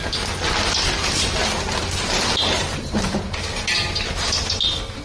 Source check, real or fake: real